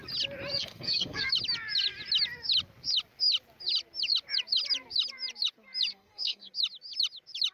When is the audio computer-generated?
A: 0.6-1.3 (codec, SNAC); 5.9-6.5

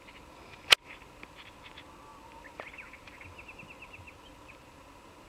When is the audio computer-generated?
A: none

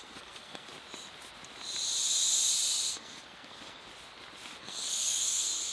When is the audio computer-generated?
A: 0.0-0.7 (codec, SNAC); 2.9-3.9; 4.6-5.7

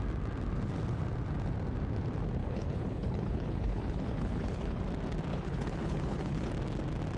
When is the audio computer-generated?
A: 2.4-4.8 (codec, HILCodec); 5.3-6.5

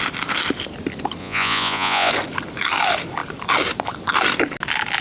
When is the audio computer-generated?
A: 1.2-2.1 (vocoder, Vocos)

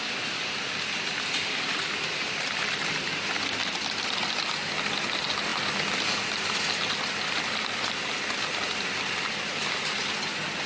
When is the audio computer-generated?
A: none

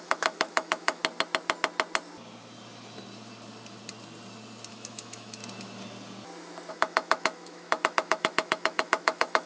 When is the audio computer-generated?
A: 0.0-1.0 (autoencoder, DAC-VAE); 4.7-5.4; 6.7-9.5

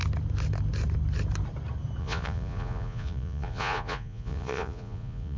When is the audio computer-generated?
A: 2.0-5.4 (vocoder, Vocos)